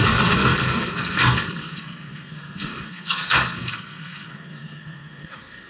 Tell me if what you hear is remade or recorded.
remade